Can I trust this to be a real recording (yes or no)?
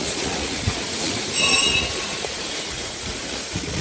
no